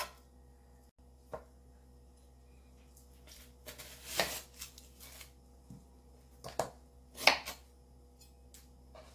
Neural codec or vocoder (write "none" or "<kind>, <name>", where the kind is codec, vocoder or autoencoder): none